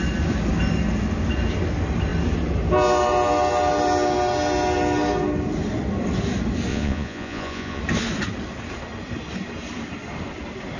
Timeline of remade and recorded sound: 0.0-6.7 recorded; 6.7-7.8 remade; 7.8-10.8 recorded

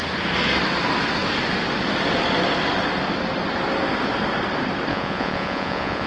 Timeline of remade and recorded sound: 0.0-4.9 recorded; 4.9-6.1 remade